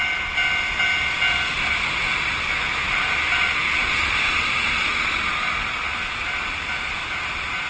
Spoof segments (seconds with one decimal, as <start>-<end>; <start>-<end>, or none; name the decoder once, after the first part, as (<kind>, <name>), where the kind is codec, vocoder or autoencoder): none